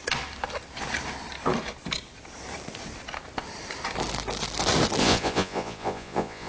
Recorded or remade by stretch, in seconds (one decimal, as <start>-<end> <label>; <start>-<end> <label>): 0.0-5.0 recorded; 5.0-6.5 remade